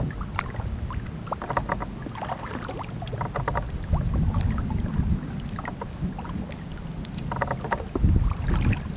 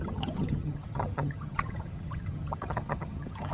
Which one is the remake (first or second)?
second